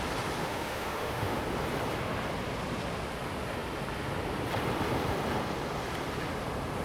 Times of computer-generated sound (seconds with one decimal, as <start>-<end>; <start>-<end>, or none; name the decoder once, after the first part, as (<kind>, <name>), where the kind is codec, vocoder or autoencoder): 0.4-1.4 (autoencoder, DAC-VAE)